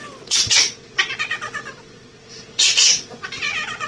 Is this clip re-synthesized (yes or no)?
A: yes